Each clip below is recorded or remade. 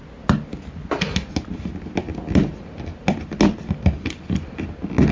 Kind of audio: recorded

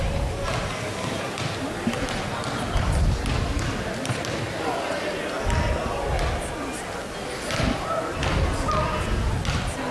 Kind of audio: recorded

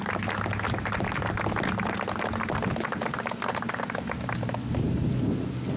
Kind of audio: recorded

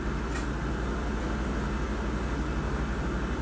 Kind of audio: recorded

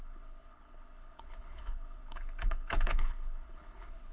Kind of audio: remade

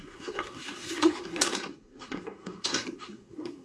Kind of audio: remade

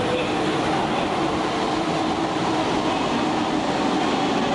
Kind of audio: recorded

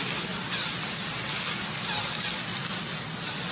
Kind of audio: recorded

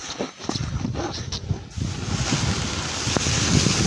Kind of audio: recorded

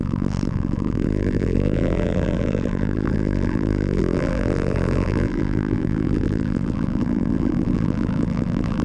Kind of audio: remade